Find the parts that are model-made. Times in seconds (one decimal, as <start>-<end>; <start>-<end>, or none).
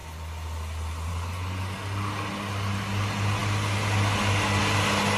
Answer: none